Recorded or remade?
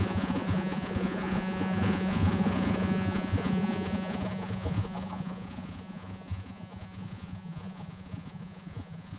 remade